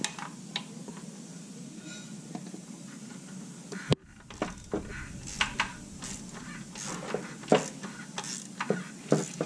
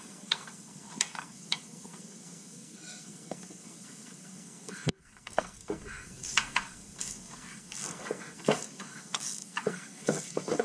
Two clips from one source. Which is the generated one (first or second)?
second